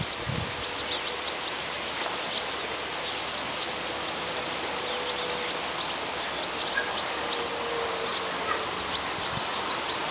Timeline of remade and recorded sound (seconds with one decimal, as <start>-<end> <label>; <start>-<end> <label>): 0.0-10.1 recorded